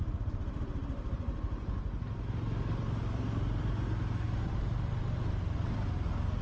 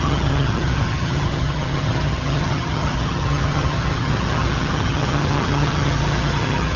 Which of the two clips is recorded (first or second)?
first